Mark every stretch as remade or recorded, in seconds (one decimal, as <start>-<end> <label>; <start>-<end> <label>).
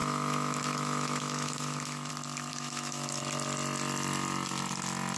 0.0-2.1 remade; 2.1-2.5 recorded; 2.5-3.2 remade; 3.2-5.2 recorded